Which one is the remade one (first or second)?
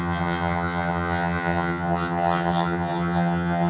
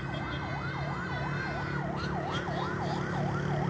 first